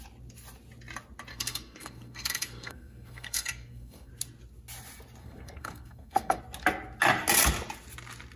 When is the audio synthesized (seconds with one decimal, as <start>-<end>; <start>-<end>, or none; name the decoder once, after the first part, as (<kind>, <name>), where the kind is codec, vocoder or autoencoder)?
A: 1.3-4.1 (codec, SNAC); 5.2-6.4